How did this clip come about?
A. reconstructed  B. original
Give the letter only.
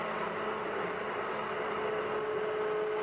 B